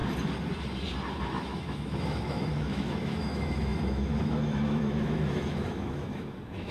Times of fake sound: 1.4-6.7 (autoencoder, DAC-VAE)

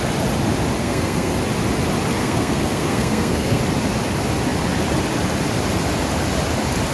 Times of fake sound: 0.8-1.3 (codec, SNAC); 2.2-3.6

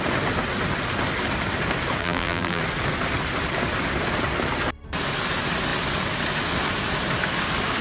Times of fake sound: 2.0-2.6 (vocoder, BigVGAN v2)